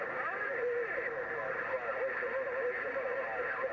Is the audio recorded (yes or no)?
no